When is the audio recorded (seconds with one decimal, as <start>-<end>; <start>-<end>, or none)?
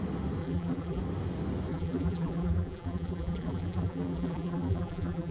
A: 0.0-0.4; 1.0-1.7